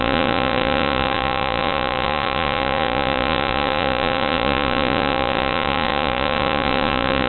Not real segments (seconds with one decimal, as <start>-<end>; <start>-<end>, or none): 0.0-7.3